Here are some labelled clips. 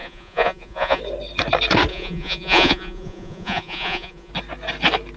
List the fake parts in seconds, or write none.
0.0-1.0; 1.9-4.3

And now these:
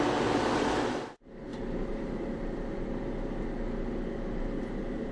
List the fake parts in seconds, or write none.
none

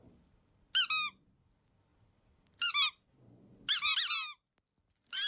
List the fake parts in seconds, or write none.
none

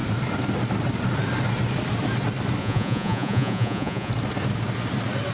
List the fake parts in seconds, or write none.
2.6-4.1

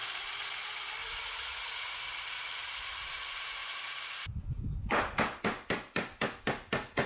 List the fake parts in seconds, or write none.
1.0-2.0

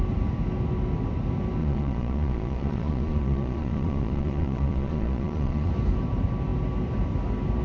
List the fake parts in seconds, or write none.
1.6-5.7